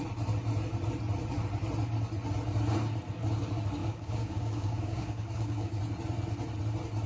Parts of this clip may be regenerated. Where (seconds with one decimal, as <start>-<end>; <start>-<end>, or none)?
3.8-5.8